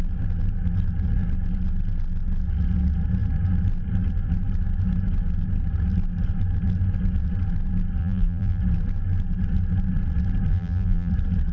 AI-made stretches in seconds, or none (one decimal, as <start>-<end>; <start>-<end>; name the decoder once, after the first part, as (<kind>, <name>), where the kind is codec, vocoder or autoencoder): 8.0-8.6 (vocoder, BigVGAN v2); 10.5-11.1